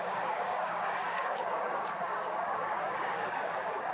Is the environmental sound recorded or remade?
remade